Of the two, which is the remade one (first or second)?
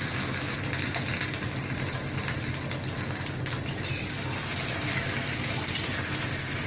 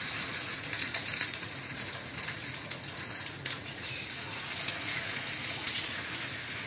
second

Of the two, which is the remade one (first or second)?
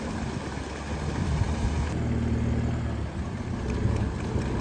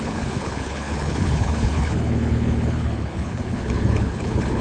second